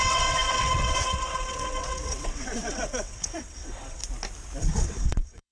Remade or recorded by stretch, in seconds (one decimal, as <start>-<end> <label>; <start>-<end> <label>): 0.0-4.0 remade; 4.0-4.6 recorded; 4.6-5.5 remade